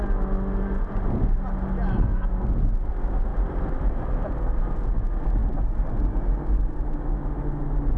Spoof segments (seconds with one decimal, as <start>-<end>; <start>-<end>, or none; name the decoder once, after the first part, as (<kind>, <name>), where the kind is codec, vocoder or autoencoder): 2.1-2.9 (vocoder, BigVGAN v2); 3.3-4.6